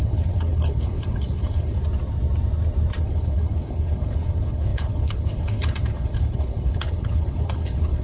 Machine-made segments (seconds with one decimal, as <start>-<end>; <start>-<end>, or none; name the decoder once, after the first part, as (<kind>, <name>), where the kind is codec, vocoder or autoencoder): 0.0-1.8 (codec, HILCodec); 3.0-8.0